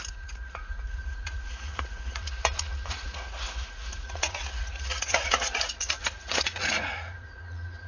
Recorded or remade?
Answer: remade